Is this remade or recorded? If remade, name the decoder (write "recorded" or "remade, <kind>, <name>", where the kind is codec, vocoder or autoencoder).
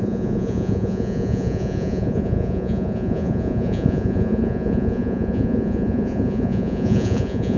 remade, vocoder, Vocos